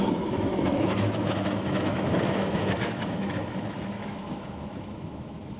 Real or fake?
fake